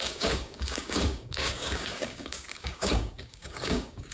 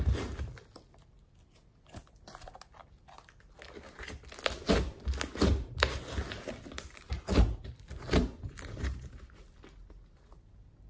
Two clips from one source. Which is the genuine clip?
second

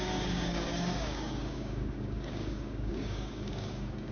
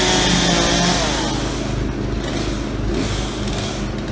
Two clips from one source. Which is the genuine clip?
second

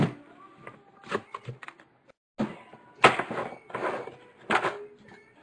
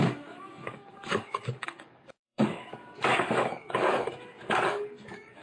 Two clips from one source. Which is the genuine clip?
first